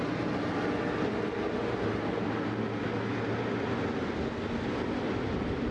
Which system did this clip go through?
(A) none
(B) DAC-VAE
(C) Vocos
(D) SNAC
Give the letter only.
A